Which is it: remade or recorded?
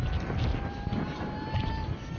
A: recorded